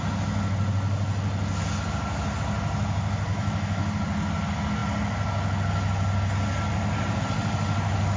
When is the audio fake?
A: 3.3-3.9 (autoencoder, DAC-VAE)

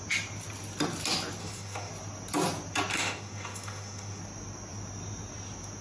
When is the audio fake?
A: 1.4-1.9 (autoencoder, DAC-VAE); 2.9-4.2

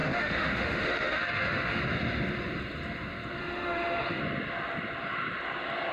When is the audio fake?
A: 0.0-1.8 (autoencoder, DAC-VAE); 3.4-4.2

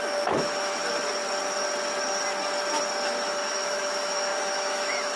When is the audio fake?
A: 0.0-0.8 (autoencoder, DAC-VAE); 3.4-5.2